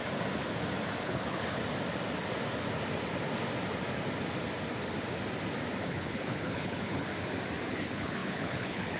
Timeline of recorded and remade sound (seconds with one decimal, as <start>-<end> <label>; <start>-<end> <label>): 0.0-1.0 recorded; 1.0-1.6 remade; 1.6-5.8 recorded; 5.8-7.1 remade; 7.1-7.7 recorded; 7.7-9.0 remade